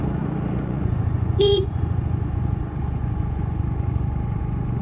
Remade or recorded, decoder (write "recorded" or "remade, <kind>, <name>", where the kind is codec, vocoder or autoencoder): remade, vocoder, Vocos